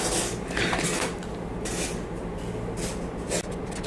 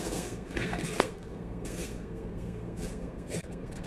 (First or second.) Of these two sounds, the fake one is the second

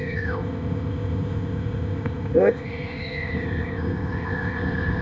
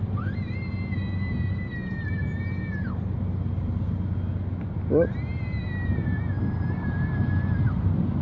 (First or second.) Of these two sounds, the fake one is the first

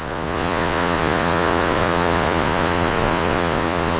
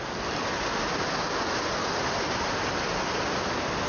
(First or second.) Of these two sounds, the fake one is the first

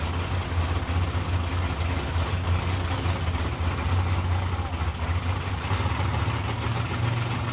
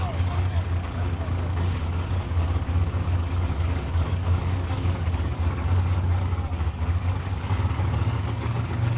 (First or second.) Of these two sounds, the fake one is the second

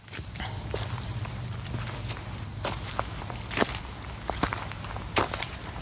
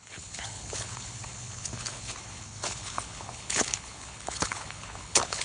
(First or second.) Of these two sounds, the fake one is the second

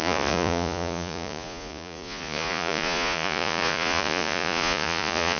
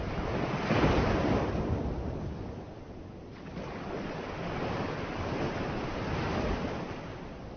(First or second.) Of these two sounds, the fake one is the first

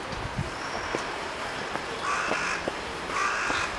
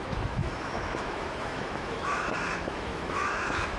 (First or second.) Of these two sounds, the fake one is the second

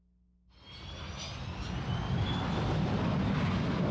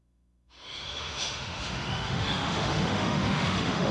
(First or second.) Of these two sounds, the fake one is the second